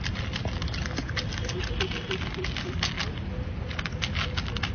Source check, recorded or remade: recorded